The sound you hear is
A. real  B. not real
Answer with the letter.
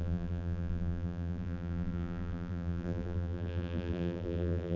B